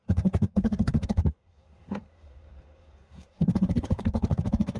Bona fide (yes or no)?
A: no